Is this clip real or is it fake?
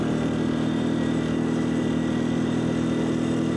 real